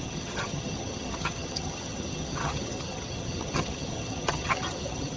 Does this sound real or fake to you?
fake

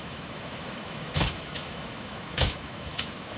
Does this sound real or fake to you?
fake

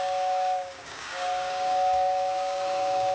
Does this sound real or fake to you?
fake